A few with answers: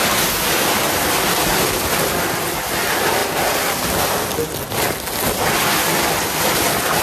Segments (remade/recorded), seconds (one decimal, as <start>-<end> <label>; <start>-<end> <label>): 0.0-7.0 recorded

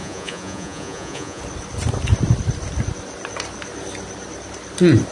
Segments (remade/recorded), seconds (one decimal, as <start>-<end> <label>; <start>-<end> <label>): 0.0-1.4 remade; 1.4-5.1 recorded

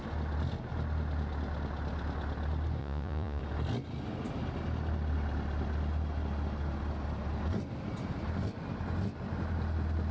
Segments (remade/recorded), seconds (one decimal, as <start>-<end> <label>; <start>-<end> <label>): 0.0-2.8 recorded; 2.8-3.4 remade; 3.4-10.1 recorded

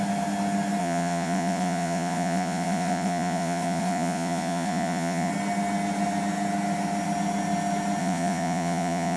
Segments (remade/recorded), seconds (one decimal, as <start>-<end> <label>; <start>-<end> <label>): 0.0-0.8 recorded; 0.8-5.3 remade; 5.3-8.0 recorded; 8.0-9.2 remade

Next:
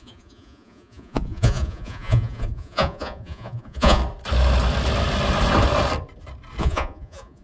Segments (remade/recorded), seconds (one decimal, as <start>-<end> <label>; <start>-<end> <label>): 0.0-4.0 remade; 4.0-6.6 recorded; 6.6-7.4 remade

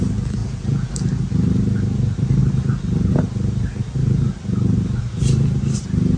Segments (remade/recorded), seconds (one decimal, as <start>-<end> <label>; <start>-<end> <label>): 0.0-0.4 recorded; 0.4-0.9 remade; 0.9-6.2 recorded

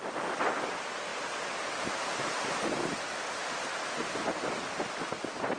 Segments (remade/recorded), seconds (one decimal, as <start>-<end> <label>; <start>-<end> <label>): 0.0-5.6 recorded

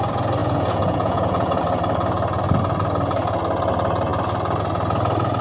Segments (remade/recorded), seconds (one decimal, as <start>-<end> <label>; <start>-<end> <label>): 0.0-0.4 recorded; 0.4-1.6 remade; 1.6-5.4 recorded